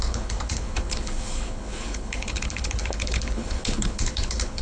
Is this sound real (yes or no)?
no